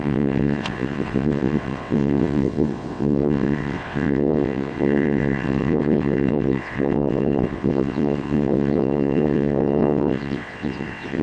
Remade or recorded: remade